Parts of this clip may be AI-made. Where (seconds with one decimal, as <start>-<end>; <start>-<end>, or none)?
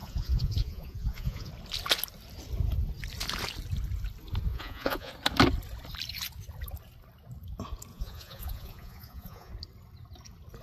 0.0-1.5; 4.5-5.1; 7.9-9.5